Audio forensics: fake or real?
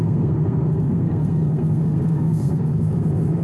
fake